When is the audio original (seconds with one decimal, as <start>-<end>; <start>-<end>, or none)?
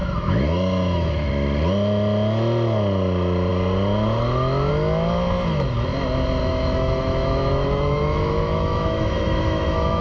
1.3-6.4